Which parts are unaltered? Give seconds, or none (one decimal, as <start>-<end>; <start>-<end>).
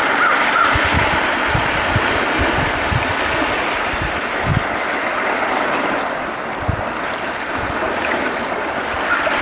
4.5-5.5